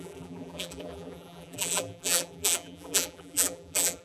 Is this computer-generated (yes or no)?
yes